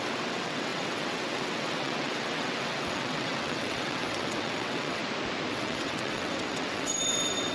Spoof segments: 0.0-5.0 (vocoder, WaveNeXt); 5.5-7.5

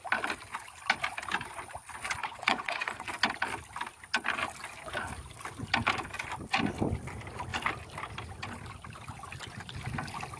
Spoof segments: 2.2-3.1 (vocoder, WaveNeXt)

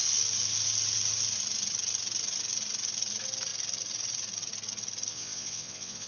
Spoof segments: 5.1-6.1 (vocoder, WaveNeXt)

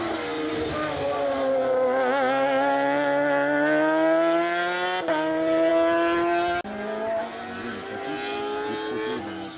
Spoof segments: none

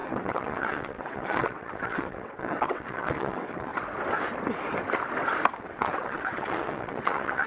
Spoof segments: 0.0-3.7 (vocoder, WaveNeXt); 5.6-7.5

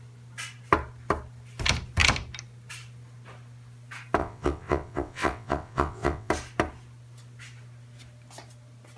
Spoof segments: 4.2-6.3 (vocoder, WaveNeXt)

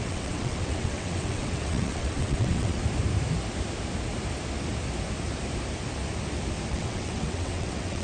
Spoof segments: 0.0-2.8 (vocoder, WaveNeXt); 6.7-8.0